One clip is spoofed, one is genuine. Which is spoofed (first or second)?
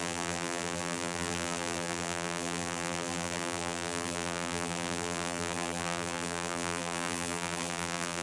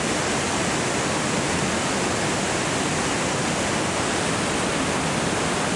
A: first